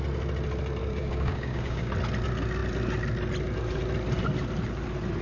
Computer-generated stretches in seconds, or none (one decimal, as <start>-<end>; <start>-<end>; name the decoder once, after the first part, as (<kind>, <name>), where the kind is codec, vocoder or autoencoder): 0.8-1.9 (codec, DAC)

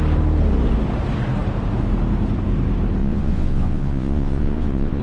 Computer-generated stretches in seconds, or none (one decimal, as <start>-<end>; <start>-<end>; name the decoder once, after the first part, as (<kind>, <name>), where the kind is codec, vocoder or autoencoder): 3.0-5.0 (vocoder, Vocos)

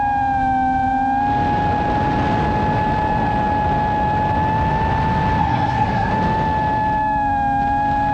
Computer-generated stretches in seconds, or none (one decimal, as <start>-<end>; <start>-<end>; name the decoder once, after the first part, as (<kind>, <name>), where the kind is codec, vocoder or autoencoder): 5.4-6.1 (codec, SNAC)

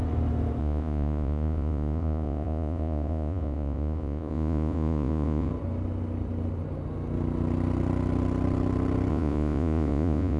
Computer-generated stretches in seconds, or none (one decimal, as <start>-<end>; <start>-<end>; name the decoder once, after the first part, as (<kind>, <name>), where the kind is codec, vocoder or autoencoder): 0.6-5.5 (vocoder, Vocos); 9.1-10.4

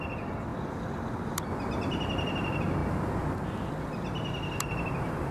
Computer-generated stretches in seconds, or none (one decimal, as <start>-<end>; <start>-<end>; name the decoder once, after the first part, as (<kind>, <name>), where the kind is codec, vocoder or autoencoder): none

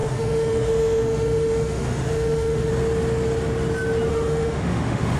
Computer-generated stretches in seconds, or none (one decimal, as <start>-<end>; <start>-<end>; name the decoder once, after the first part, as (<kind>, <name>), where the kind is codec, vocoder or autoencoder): 0.0-2.7 (autoencoder, DAC-VAE); 4.1-5.2

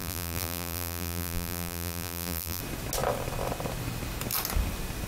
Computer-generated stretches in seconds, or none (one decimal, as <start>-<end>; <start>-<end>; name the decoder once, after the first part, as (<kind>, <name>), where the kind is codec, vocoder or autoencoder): 0.0-2.6 (vocoder, BigVGAN v2)

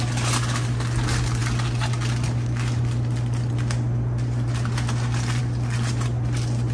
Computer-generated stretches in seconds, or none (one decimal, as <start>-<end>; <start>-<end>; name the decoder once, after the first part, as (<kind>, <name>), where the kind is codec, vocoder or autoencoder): none